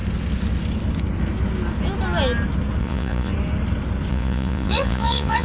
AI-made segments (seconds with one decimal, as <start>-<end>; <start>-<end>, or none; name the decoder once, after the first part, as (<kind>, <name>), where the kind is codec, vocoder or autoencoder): 2.8-3.3 (vocoder, Vocos); 4.1-5.4